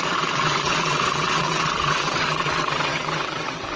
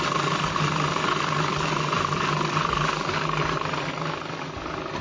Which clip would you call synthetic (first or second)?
first